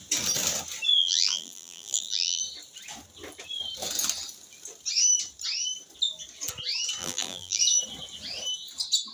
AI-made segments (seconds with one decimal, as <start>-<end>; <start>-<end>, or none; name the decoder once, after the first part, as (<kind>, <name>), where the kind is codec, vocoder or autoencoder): 1.0-2.4 (vocoder, BigVGAN v2); 7.0-7.6